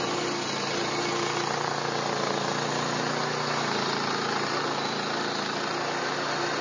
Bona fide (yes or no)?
yes